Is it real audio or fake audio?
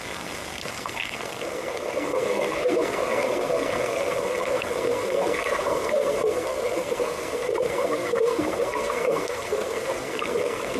fake